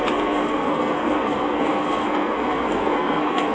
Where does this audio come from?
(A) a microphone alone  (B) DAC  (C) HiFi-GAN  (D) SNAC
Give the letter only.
D